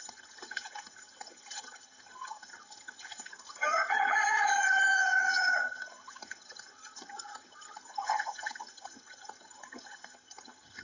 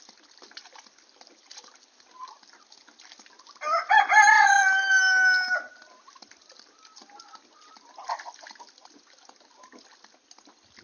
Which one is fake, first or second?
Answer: first